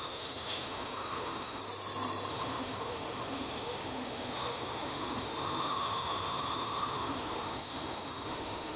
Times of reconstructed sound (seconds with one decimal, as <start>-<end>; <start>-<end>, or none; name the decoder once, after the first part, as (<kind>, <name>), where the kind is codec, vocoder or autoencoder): 0.0-1.6 (autoencoder, DAC-VAE); 2.3-8.8